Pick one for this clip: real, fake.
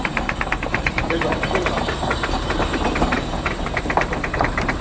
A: fake